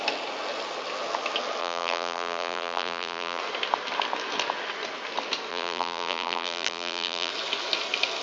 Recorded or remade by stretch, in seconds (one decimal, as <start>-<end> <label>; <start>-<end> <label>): 0.0-1.6 recorded; 1.6-3.4 remade; 3.4-5.5 recorded; 5.5-7.3 remade; 7.3-8.2 recorded